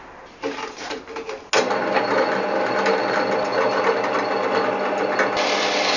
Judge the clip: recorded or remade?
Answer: recorded